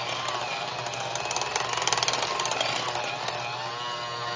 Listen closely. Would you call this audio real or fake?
real